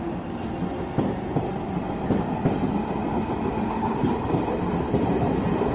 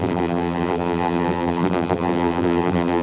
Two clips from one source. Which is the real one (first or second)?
first